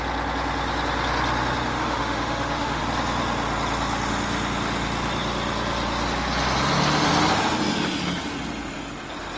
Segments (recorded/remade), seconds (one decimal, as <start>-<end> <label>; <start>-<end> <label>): 0.0-1.7 recorded; 1.7-2.8 remade; 2.8-9.4 recorded